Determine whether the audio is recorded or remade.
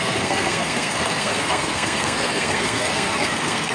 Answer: remade